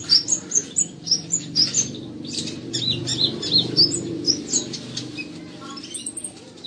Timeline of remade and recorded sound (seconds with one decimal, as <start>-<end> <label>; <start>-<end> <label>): 0.0-3.1 remade; 3.1-5.8 recorded; 5.8-6.7 remade